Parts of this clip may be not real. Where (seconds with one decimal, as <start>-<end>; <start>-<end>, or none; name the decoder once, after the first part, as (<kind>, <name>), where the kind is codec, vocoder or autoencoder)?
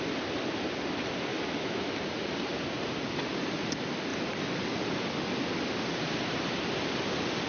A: 1.3-1.9 (autoencoder, DAC-VAE)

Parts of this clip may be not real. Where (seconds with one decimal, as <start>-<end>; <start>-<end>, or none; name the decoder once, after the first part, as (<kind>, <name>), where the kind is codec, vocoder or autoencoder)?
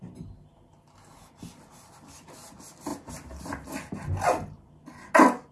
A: none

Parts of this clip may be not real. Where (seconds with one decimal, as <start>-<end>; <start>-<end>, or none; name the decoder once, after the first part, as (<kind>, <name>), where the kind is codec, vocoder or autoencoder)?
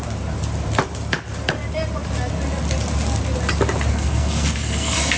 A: 3.9-5.2 (codec, SNAC)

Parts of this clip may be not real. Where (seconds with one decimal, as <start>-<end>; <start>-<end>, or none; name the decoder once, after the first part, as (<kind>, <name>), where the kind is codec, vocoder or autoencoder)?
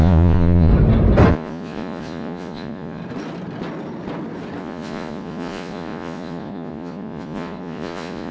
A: 0.0-0.7 (vocoder, Vocos); 1.3-3.0; 4.6-8.3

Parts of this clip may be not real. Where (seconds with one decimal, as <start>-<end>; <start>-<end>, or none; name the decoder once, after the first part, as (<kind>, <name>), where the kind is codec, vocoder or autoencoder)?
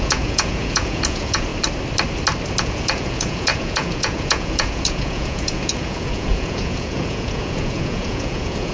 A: 0.0-1.5 (vocoder, Vocos); 2.6-8.7